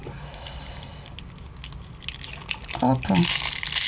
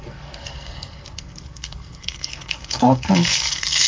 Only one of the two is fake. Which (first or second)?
second